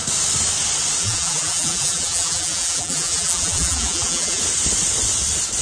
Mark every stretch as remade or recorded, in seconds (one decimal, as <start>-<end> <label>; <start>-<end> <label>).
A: 0.0-1.0 recorded; 1.0-4.4 remade; 4.4-5.6 recorded